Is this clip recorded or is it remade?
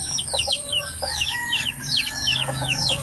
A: remade